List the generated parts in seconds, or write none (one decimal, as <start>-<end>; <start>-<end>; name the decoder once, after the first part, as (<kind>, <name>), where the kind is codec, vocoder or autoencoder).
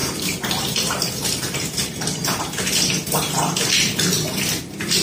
none